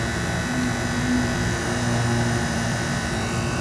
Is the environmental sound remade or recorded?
recorded